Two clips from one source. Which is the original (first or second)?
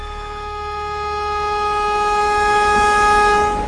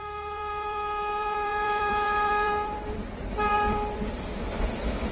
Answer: first